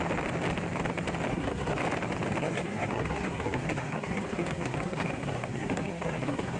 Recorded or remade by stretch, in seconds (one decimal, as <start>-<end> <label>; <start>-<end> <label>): 0.0-1.3 recorded; 1.3-1.8 remade; 1.8-2.4 recorded; 2.4-6.6 remade